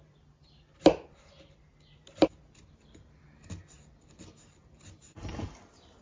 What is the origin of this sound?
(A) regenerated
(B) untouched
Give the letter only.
B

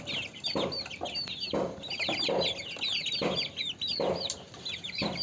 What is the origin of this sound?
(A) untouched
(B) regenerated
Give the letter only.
A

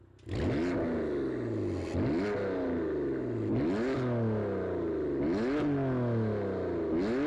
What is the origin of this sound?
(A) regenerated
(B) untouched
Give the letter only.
B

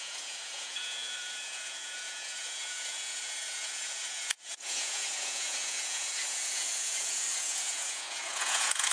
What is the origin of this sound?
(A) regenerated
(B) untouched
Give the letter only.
A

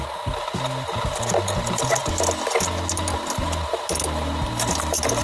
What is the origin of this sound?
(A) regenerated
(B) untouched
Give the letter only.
B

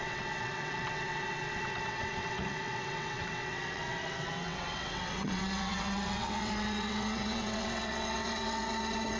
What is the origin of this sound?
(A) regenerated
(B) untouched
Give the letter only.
A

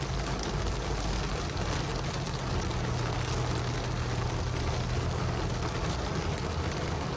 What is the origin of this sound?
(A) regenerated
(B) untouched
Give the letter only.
B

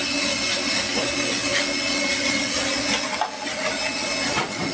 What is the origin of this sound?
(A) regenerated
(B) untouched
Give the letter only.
B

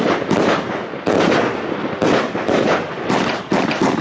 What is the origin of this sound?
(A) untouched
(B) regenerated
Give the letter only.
A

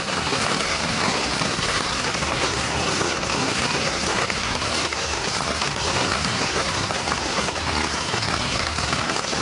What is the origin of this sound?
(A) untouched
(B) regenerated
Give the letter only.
B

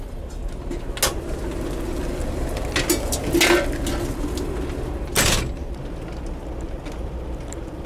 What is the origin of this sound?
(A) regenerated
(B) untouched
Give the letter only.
B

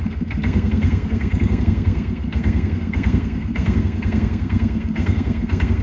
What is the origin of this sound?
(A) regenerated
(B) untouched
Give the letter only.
A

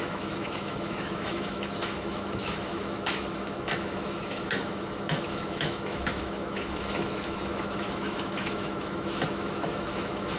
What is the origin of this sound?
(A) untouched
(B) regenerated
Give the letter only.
B